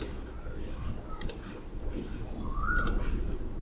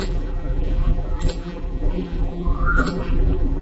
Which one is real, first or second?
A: first